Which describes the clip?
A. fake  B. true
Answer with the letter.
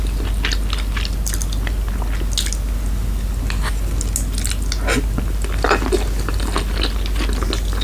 B